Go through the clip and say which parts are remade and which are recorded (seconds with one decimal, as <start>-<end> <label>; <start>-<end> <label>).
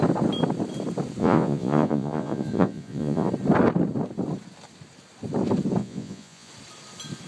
0.0-1.2 recorded; 1.2-3.3 remade; 3.3-5.8 recorded; 5.8-6.5 remade; 6.5-7.3 recorded